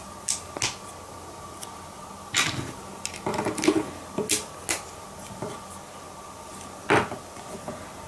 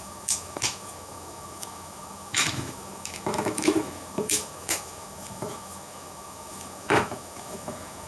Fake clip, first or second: second